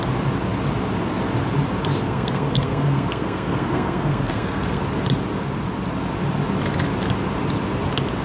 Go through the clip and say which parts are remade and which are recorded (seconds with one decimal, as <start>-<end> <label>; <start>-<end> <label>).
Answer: 0.0-1.8 recorded; 1.8-4.8 remade; 4.8-8.2 recorded